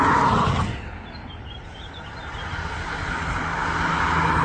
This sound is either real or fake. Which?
real